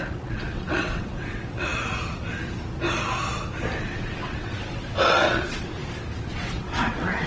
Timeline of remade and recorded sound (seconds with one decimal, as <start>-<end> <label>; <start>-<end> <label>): 0.0-1.7 remade; 1.7-3.8 recorded; 3.8-5.8 remade; 5.8-6.3 recorded; 6.3-7.3 remade

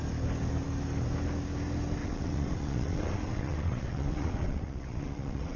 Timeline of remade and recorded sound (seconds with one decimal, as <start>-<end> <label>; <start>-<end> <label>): 0.0-2.0 recorded; 2.0-5.6 remade

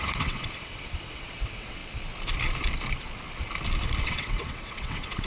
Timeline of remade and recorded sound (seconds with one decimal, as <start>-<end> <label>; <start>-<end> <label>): 0.0-1.8 remade; 1.8-4.0 recorded; 4.0-5.3 remade

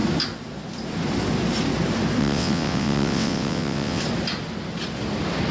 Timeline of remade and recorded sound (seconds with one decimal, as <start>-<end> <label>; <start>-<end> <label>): 0.0-2.2 recorded; 2.2-4.0 remade; 4.0-5.5 recorded

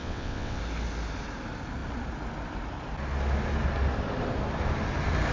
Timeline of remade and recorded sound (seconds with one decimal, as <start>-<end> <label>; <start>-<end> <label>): 0.0-0.6 remade; 0.6-5.3 recorded

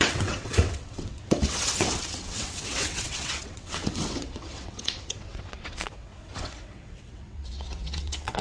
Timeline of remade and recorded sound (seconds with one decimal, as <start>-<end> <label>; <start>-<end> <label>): 0.0-8.4 remade

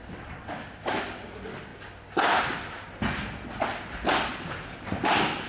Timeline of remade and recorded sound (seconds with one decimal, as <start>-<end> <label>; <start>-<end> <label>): 0.0-0.5 remade; 0.5-5.5 recorded